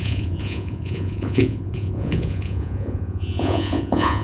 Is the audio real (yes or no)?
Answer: no